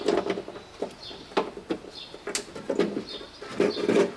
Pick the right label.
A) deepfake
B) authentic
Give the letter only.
B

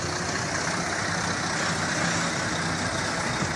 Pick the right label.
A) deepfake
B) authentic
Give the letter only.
B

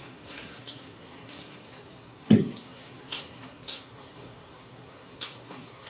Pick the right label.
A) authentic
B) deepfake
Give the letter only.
B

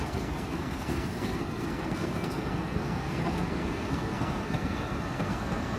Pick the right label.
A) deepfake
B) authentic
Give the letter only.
A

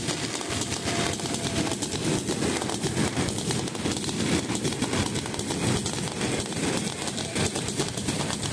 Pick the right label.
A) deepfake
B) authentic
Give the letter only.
B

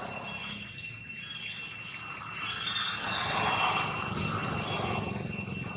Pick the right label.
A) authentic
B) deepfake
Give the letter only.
A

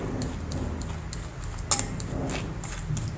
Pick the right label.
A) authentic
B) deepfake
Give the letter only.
A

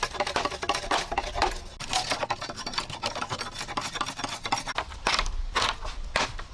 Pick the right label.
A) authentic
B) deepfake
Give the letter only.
A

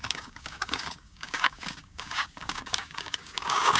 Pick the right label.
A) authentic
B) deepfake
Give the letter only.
B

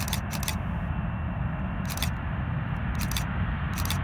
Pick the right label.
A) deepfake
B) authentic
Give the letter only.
B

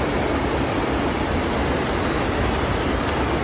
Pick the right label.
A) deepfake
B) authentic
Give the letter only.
B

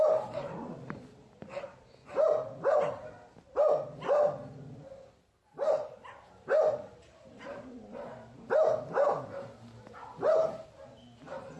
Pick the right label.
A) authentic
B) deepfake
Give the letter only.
A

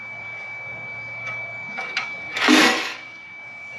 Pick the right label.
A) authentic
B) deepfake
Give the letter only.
B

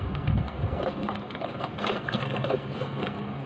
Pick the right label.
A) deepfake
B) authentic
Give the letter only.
A